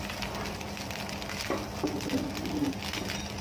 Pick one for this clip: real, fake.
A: real